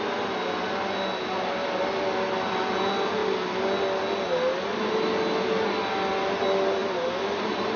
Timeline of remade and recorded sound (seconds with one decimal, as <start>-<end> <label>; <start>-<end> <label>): 0.0-7.8 recorded